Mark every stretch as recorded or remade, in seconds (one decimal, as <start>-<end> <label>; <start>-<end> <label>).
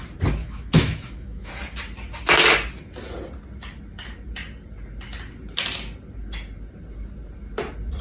0.0-0.4 recorded; 0.4-1.5 remade; 1.5-8.0 recorded